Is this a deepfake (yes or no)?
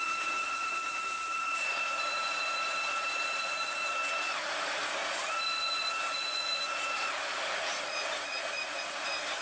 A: yes